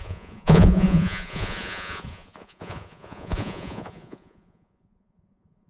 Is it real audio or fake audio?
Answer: fake